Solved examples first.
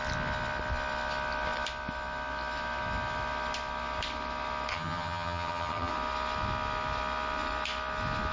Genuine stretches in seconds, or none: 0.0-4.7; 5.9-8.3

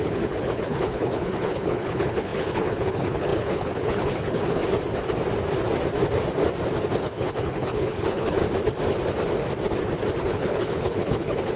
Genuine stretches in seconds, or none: 4.6-6.9; 8.4-10.2

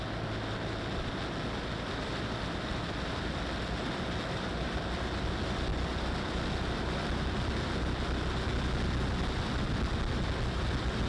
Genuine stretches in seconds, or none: 0.0-11.1

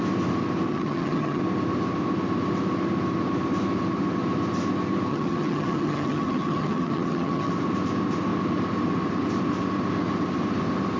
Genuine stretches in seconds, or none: 0.0-0.7; 1.4-5.1; 7.5-11.0

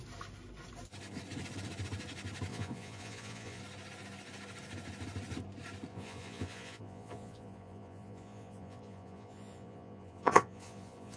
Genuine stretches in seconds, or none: 0.0-2.5; 3.6-5.9

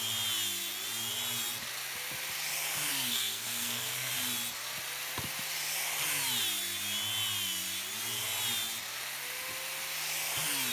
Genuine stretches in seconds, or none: 0.0-2.9; 4.1-10.7

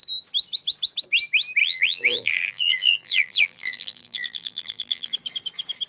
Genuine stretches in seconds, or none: 0.0-1.6; 5.1-5.9